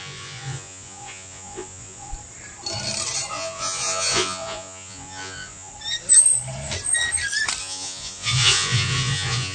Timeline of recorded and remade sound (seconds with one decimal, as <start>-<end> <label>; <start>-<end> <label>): 0.0-2.1 remade; 2.1-3.3 recorded; 3.3-5.7 remade; 5.7-7.6 recorded; 7.6-9.5 remade